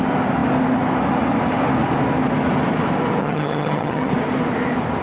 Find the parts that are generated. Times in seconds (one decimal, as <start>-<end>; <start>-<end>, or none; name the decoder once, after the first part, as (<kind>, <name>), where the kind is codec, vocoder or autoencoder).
3.2-4.1 (vocoder, HiFi-GAN)